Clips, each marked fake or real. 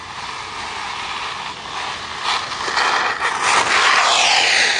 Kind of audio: real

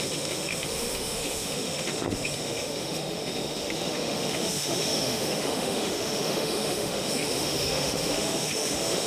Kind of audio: fake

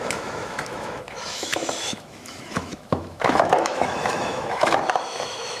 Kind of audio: fake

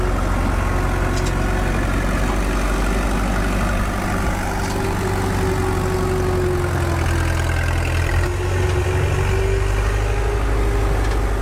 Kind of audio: real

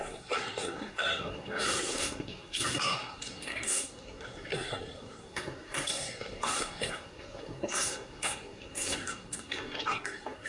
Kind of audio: fake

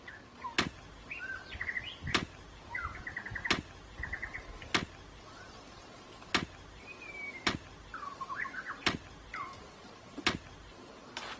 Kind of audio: real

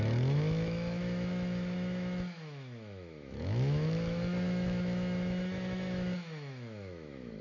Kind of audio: fake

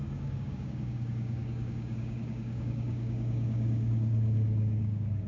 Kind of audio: fake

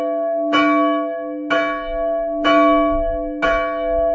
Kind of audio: real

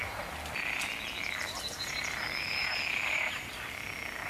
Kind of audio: fake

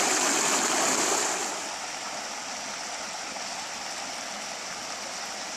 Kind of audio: real